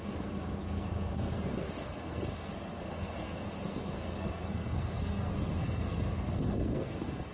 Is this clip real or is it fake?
fake